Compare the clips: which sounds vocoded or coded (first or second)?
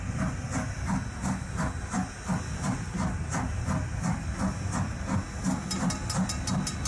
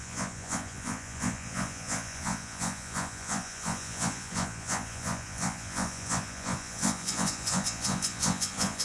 second